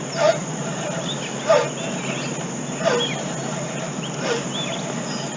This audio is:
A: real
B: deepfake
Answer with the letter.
A